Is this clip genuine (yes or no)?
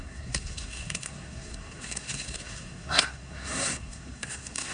no